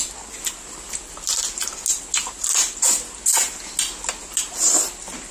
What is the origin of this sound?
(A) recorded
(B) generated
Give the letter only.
A